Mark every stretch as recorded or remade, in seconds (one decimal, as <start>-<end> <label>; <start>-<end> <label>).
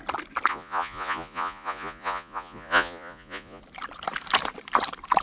0.0-0.5 recorded; 0.5-3.6 remade; 3.6-5.2 recorded